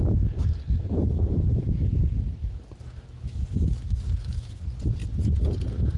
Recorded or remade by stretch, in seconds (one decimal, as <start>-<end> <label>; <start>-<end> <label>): 0.0-2.4 recorded; 2.4-4.6 remade; 4.6-6.0 recorded